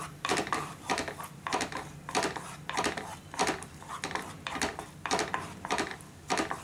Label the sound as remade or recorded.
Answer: remade